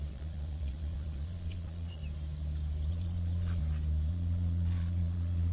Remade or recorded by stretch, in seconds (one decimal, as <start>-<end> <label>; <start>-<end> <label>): 0.0-2.0 remade; 2.0-2.9 recorded; 2.9-3.6 remade; 3.6-4.1 recorded; 4.1-5.5 remade